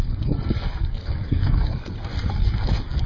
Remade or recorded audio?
remade